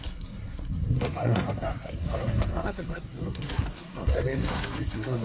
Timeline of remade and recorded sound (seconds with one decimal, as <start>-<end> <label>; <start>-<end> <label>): 0.0-5.2 remade